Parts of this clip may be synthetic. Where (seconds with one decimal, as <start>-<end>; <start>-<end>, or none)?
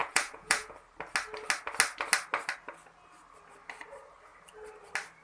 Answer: 0.0-0.7